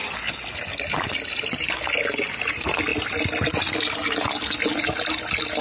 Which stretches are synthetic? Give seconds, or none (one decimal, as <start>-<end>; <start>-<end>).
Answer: none